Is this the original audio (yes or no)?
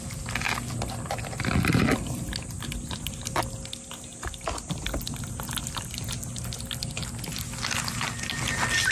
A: yes